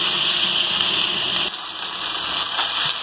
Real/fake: real